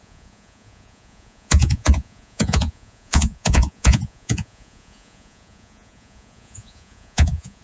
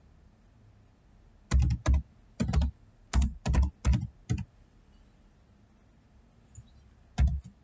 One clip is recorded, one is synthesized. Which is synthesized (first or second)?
first